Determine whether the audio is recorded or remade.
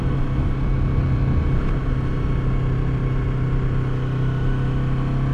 recorded